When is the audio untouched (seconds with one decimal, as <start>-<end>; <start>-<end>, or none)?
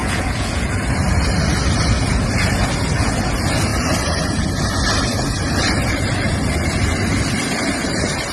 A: 0.7-8.3